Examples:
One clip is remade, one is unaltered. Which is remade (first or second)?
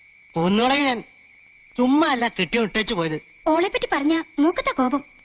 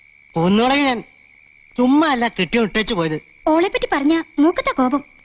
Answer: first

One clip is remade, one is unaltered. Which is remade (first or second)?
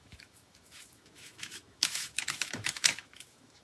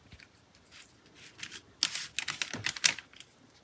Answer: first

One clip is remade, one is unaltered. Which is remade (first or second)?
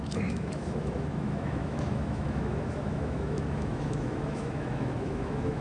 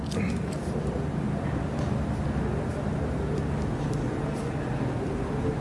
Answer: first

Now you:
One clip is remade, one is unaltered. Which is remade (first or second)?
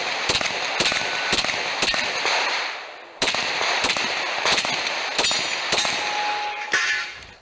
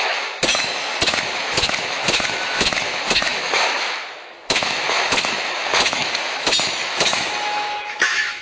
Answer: second